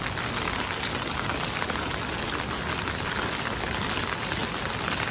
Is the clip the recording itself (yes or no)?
yes